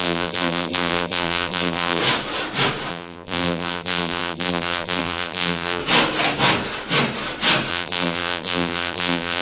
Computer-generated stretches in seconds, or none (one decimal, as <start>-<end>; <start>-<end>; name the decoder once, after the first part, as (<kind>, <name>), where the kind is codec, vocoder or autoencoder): 0.0-2.0 (vocoder, BigVGAN v2); 2.9-5.8; 7.7-9.4